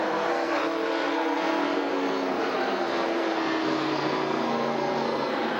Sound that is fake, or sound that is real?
fake